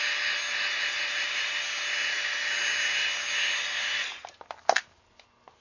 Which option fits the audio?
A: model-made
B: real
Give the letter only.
B